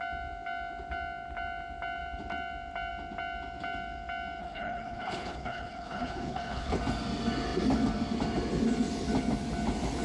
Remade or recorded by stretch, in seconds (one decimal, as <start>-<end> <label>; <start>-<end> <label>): 0.0-4.4 recorded; 4.4-6.8 remade; 6.8-10.0 recorded